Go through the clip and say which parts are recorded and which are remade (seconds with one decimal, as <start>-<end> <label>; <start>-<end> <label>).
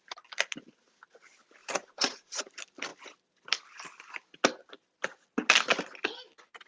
0.0-1.6 recorded; 1.6-2.5 remade; 2.5-6.7 recorded